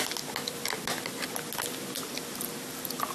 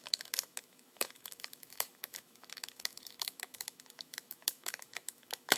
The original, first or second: first